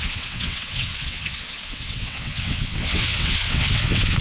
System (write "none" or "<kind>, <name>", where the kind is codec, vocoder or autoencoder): vocoder, WaveNeXt